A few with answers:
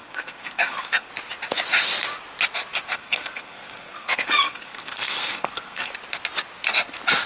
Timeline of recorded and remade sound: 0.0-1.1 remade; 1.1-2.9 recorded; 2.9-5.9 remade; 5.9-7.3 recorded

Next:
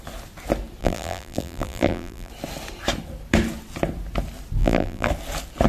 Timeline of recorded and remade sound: 0.0-0.8 recorded; 0.8-2.3 remade; 2.3-4.6 recorded; 4.6-5.1 remade; 5.1-5.7 recorded

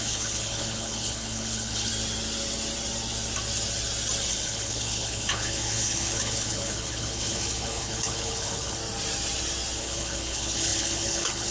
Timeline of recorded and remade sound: 0.0-1.9 remade; 1.9-4.3 recorded; 4.3-8.8 remade; 8.8-9.8 recorded; 9.8-11.5 remade

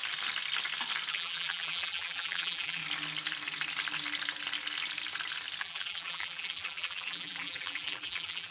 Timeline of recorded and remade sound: 0.0-1.1 recorded; 1.1-2.8 remade; 2.8-5.6 recorded; 5.6-8.5 remade